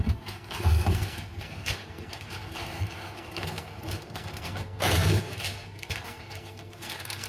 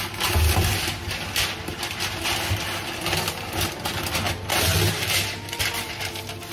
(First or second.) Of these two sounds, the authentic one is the second